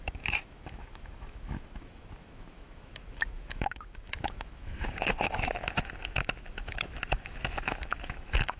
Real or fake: fake